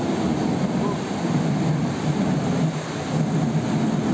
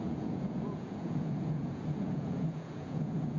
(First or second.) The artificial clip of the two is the second